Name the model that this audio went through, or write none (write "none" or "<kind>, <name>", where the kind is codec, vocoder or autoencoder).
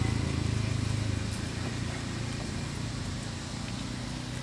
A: none